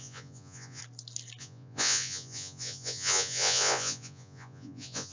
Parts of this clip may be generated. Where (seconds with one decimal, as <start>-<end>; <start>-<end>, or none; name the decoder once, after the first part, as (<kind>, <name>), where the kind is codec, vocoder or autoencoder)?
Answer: 0.0-0.8 (vocoder, Vocos); 1.4-5.1